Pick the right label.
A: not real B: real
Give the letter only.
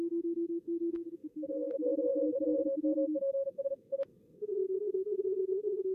A